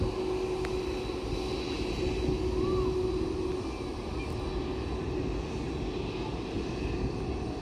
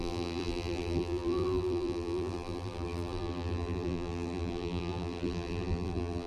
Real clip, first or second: first